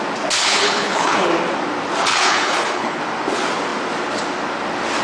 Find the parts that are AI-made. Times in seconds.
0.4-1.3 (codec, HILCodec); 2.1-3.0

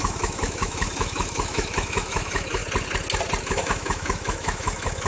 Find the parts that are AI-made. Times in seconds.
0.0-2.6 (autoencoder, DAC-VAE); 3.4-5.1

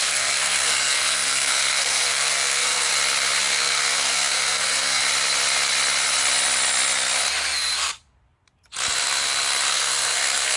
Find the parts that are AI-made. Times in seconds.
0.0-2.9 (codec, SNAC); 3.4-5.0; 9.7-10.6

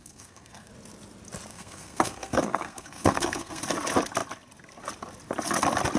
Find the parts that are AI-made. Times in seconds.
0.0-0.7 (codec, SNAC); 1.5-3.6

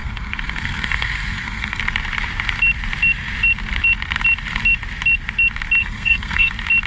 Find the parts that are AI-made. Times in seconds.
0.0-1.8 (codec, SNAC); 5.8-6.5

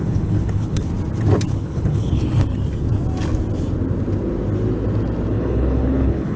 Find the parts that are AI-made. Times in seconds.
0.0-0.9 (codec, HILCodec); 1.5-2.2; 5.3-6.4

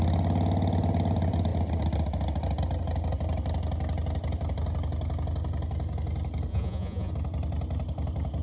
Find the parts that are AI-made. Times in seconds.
6.5-7.1 (vocoder, Vocos)